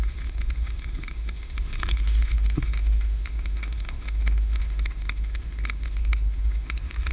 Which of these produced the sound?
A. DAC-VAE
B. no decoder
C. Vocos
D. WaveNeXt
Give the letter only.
A